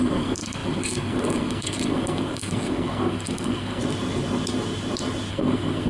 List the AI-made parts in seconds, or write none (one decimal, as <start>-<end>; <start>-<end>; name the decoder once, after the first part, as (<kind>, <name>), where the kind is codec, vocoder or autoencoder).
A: 0.0-3.8 (codec, SNAC); 5.3-5.9